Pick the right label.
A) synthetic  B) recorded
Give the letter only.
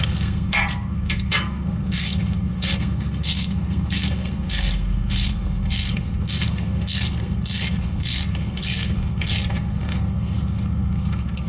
A